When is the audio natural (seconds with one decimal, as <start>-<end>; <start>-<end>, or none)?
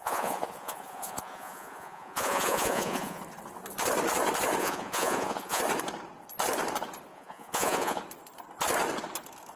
3.2-4.6; 5.6-7.1; 8.0-9.6